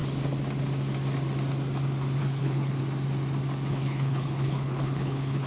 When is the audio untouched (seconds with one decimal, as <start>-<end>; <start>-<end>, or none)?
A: 0.0-2.2; 2.8-3.7